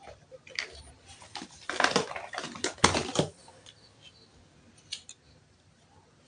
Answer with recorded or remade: recorded